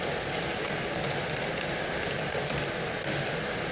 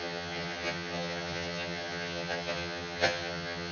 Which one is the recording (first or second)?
first